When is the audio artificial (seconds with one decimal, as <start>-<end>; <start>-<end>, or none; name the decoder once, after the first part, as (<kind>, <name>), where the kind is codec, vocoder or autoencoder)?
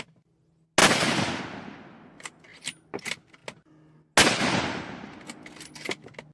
0.8-1.4 (vocoder, BigVGAN v2); 2.5-3.0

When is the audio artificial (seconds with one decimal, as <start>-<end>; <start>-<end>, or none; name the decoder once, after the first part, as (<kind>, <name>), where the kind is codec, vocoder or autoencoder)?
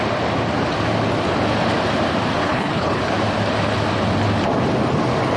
2.4-3.0 (codec, HILCodec)